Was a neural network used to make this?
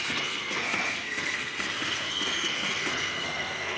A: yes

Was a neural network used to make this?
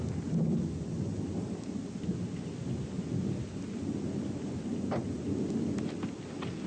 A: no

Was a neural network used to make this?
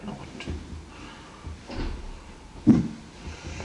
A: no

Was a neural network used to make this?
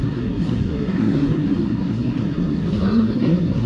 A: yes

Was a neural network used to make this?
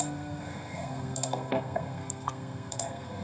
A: yes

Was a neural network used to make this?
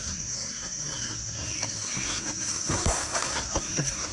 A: yes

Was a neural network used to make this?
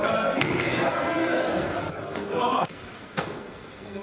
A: yes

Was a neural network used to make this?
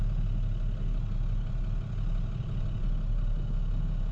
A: no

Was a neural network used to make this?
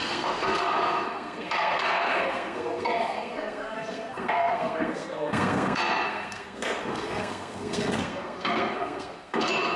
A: yes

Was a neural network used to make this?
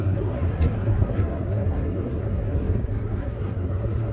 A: yes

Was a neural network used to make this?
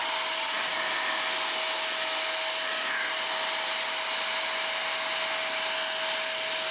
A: no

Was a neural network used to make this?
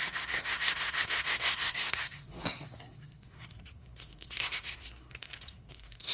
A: yes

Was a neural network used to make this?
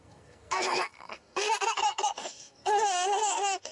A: yes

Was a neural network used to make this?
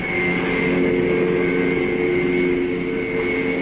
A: no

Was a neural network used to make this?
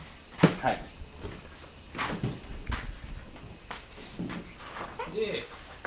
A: no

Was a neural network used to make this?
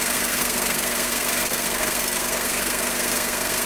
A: yes